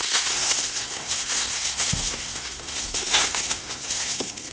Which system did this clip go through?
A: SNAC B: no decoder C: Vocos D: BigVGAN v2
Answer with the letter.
A